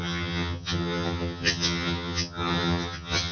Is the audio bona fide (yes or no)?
no